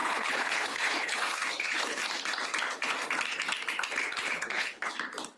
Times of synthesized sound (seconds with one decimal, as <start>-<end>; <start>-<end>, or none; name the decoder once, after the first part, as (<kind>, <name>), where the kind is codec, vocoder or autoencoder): 0.0-2.0 (codec, HILCodec); 4.0-4.9